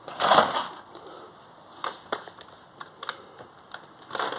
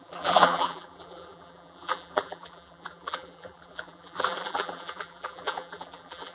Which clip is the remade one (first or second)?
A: second